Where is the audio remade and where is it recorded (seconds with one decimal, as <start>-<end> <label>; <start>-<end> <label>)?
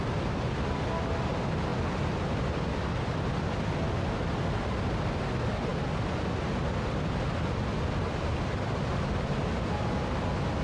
0.0-10.6 recorded